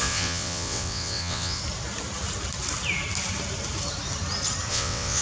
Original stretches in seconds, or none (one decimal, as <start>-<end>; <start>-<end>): 1.6-4.7

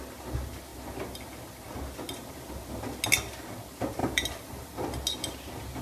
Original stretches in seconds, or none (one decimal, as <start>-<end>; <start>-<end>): 0.0-4.0; 4.7-5.8

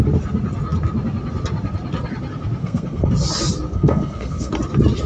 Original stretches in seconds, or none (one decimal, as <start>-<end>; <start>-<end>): 0.0-2.6; 3.1-3.7; 4.5-5.1

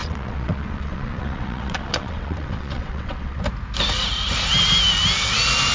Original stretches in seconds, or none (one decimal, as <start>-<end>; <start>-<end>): 3.4-5.7

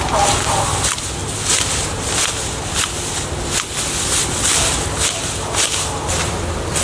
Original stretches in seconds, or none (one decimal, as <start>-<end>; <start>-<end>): 0.0-6.8

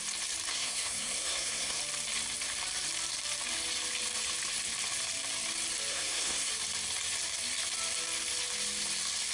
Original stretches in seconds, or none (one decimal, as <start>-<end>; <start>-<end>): 0.0-0.5; 1.8-5.9; 6.5-9.3

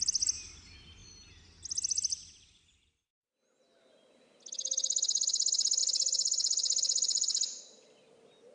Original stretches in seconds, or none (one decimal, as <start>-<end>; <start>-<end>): 0.0-5.8; 7.6-8.5

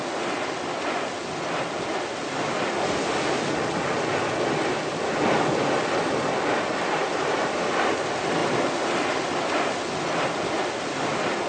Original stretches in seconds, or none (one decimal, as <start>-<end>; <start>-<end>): 0.0-7.0; 7.7-11.5